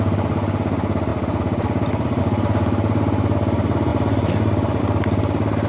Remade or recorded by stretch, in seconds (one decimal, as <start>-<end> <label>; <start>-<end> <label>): 0.0-5.7 recorded